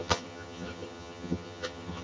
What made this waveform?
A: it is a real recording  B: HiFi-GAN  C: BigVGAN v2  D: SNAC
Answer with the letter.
B